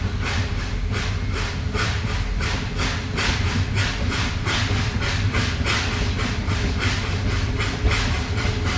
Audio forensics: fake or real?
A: real